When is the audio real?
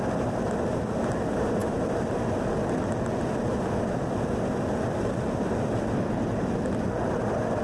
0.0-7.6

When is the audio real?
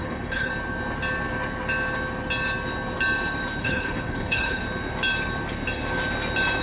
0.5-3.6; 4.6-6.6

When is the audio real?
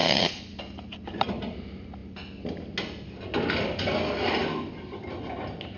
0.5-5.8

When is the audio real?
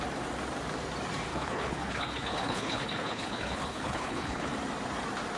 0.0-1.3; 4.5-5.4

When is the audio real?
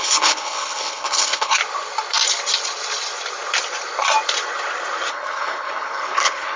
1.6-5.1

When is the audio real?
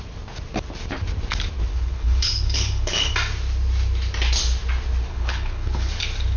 0.0-1.7; 3.1-5.1; 5.9-6.4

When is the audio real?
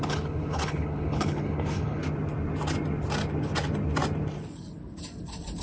2.0-5.6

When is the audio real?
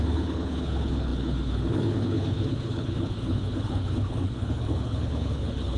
none